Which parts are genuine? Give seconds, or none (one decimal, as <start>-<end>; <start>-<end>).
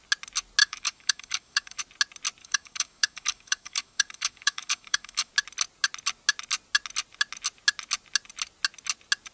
0.0-0.6; 1.8-2.4; 5.3-9.3